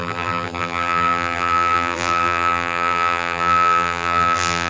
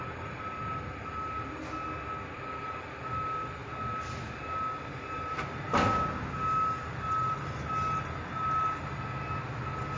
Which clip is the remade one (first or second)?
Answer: first